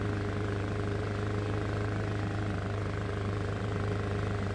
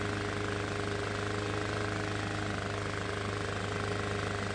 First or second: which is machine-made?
first